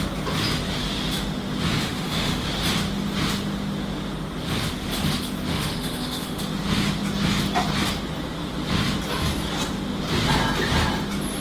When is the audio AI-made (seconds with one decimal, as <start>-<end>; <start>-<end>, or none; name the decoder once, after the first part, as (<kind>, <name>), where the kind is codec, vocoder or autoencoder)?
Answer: 1.8-2.5 (autoencoder, DAC-VAE); 5.5-6.4